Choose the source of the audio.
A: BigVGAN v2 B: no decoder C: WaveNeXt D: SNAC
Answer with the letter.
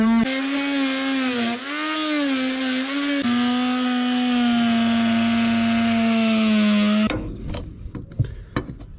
B